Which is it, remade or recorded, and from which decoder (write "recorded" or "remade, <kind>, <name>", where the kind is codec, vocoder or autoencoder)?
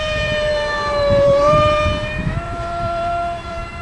remade, vocoder, BigVGAN v2